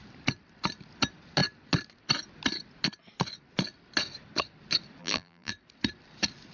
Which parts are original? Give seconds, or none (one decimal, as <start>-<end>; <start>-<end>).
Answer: 0.0-5.0; 5.5-6.5